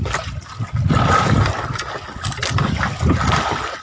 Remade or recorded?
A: recorded